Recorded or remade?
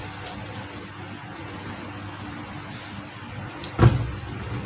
recorded